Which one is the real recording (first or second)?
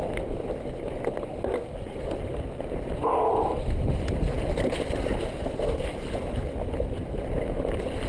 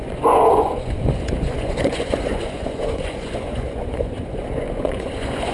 first